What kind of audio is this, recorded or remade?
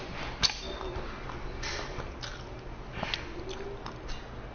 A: recorded